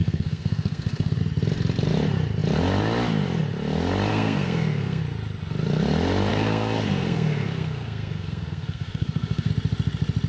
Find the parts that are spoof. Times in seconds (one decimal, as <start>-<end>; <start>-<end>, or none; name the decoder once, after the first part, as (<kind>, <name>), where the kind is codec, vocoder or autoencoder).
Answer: 0.0-1.2 (codec, SNAC); 4.1-5.0; 6.3-9.5